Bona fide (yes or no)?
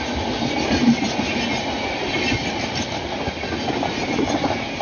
yes